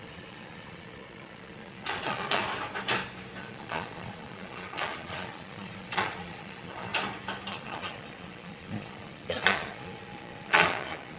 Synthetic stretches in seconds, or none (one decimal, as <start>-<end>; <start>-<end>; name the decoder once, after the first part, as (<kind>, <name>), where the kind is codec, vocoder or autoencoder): 0.0-2.4 (vocoder, Vocos); 3.4-6.9; 7.5-11.2